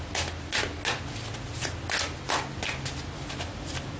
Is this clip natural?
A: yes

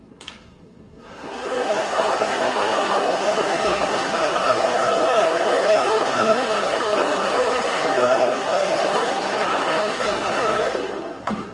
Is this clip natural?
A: no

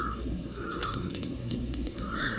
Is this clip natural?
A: no